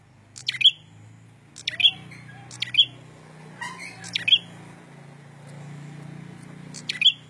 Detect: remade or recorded recorded